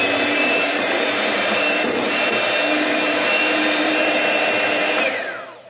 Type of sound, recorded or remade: remade